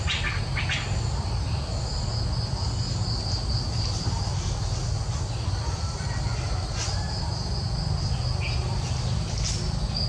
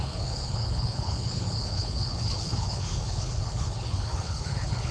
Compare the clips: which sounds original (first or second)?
first